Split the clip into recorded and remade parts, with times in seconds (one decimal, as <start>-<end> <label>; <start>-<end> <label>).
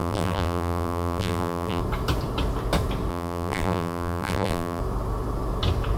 0.0-1.8 remade; 1.8-3.1 recorded; 3.1-4.8 remade; 4.8-6.0 recorded